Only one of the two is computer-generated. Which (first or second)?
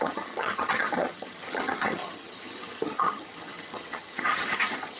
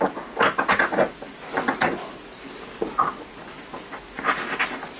first